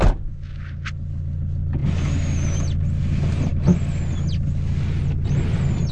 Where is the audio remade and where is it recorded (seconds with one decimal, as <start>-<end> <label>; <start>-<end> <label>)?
0.0-5.9 recorded